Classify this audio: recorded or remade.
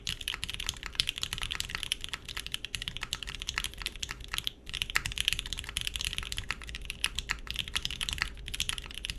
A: remade